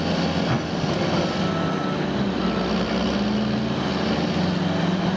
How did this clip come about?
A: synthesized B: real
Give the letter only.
B